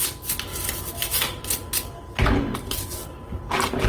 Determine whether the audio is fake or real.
real